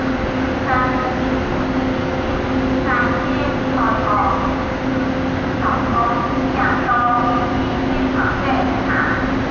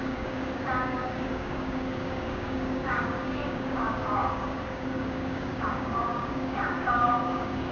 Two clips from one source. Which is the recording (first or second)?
first